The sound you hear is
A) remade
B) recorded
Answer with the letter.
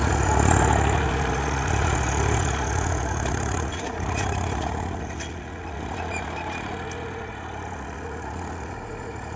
A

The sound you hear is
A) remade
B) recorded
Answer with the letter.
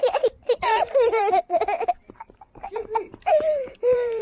A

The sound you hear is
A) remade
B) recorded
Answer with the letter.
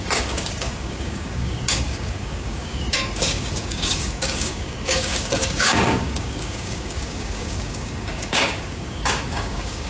A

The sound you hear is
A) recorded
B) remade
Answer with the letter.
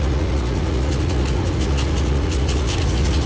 B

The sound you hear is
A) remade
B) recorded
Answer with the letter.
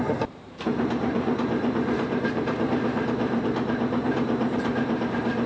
A